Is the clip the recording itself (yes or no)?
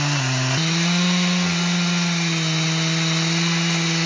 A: yes